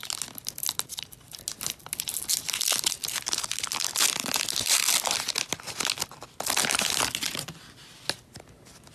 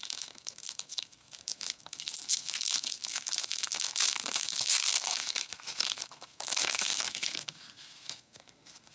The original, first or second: first